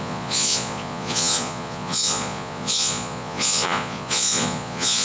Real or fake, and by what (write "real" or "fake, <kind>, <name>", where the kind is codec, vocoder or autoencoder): fake, vocoder, Vocos